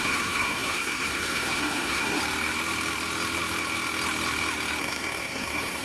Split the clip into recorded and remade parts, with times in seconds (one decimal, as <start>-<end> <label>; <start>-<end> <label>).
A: 0.0-2.2 remade; 2.2-4.8 recorded; 4.8-5.8 remade